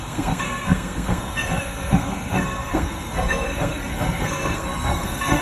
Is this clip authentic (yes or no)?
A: no